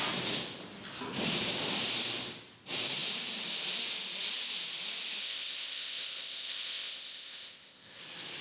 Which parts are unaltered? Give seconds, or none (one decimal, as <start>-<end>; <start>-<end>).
0.0-5.2; 8.0-8.4